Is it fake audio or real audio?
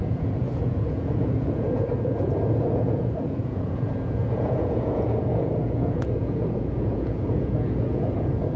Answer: fake